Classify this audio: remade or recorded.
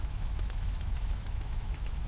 remade